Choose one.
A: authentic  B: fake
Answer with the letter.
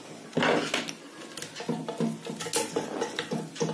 A